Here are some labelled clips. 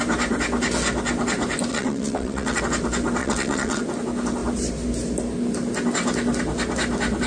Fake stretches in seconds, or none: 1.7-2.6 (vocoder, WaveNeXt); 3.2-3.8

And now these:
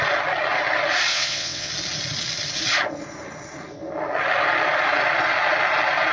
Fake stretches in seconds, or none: 1.1-1.7 (vocoder, WaveNeXt)

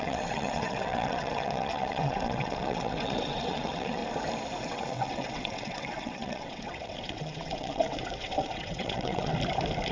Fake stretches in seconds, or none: 0.0-4.0 (vocoder, WaveNeXt); 4.7-9.3

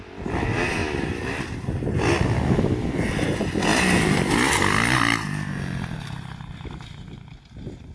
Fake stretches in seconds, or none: none

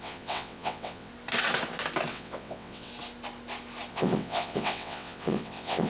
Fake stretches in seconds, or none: 0.0-1.1 (vocoder, WaveNeXt); 2.1-2.9; 3.9-5.9

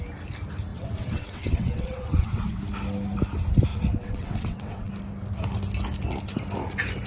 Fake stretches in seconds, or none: 0.7-2.6 (vocoder, WaveNeXt); 3.7-4.9

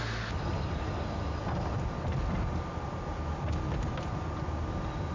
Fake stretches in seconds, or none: none